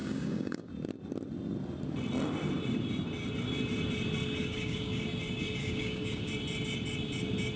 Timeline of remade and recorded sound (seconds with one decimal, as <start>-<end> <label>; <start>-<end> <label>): 0.0-0.7 remade; 0.7-4.4 recorded; 4.4-5.0 remade; 5.0-5.6 recorded; 5.6-6.3 remade; 6.3-7.6 recorded